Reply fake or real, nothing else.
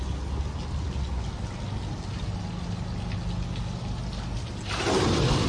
real